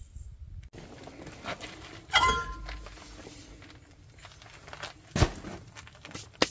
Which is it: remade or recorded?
recorded